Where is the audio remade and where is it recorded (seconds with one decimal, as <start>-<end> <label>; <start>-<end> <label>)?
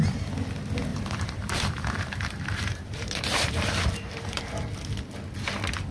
0.0-0.9 recorded; 0.9-4.4 remade; 4.4-5.9 recorded